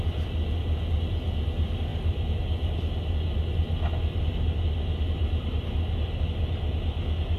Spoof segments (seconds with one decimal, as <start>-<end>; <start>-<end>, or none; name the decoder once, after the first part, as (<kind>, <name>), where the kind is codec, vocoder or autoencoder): none